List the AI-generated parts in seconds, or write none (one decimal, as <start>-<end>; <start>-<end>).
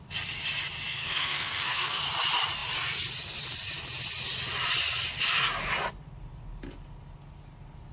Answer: 1.0-2.0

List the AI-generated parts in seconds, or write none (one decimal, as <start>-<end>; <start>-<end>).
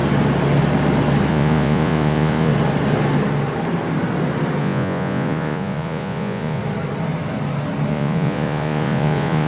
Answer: 1.3-2.5; 4.6-6.6; 7.9-9.5